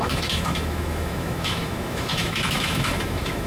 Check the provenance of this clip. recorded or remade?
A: remade